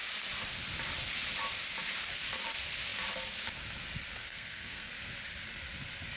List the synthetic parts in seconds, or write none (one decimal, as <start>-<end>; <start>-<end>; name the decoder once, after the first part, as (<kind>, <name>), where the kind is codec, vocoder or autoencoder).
4.2-4.9 (codec, SNAC)